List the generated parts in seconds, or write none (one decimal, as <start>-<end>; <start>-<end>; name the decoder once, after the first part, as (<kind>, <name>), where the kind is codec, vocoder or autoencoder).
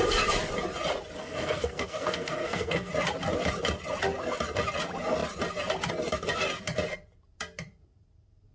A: 1.2-2.9 (codec, SNAC)